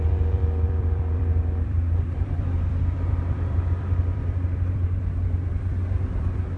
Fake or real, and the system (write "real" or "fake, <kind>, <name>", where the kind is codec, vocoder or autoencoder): fake, vocoder, BigVGAN v2